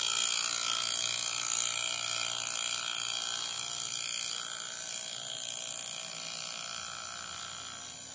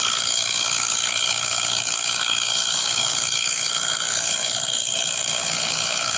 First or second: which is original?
first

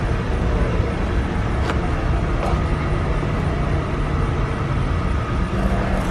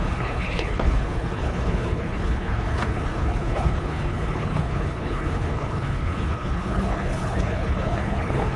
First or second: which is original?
first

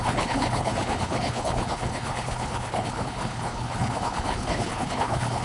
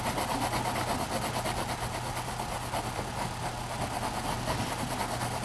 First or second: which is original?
second